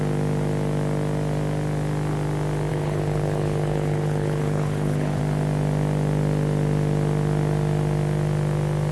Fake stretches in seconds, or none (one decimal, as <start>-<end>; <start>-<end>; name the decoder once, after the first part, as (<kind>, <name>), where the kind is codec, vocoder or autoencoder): 2.7-5.2 (codec, HILCodec)